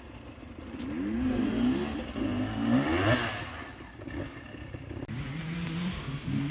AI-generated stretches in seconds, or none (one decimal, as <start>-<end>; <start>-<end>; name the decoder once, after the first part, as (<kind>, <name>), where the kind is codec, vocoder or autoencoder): none